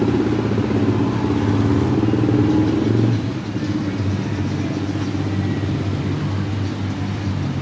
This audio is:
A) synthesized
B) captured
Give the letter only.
B